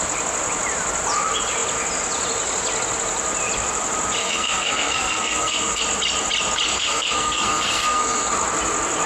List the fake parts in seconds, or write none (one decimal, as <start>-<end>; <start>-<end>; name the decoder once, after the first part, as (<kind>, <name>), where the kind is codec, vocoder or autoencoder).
4.2-5.8 (codec, SNAC); 6.7-8.3